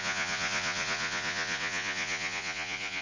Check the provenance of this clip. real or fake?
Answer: fake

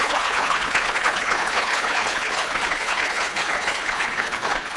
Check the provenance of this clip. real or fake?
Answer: fake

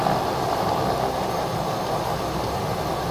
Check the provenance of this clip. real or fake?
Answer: real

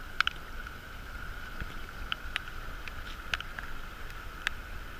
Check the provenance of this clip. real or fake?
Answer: real